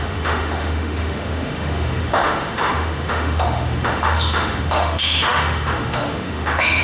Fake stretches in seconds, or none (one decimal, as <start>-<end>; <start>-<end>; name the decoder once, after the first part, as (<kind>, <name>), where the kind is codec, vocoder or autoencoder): 0.0-6.8 (autoencoder, DAC-VAE)